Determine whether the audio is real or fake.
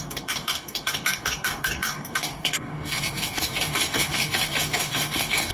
fake